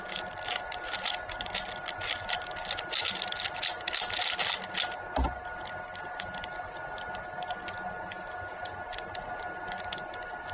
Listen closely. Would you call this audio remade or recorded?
recorded